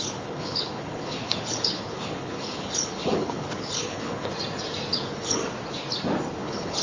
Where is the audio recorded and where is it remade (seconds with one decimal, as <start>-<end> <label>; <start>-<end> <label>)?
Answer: 0.0-4.3 remade; 4.3-4.9 recorded; 4.9-5.4 remade; 5.4-6.3 recorded; 6.3-6.8 remade